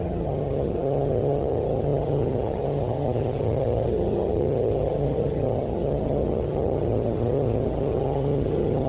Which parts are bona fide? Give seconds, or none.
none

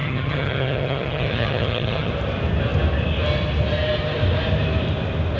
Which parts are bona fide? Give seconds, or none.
2.1-5.4

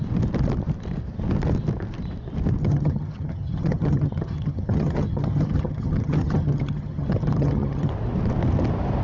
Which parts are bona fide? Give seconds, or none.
0.0-2.6; 7.9-9.0

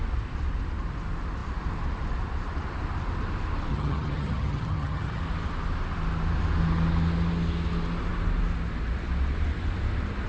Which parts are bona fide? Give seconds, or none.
0.0-3.7; 5.2-10.3